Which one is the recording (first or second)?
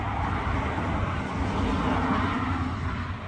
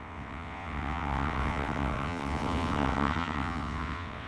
first